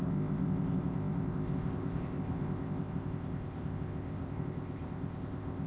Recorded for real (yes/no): no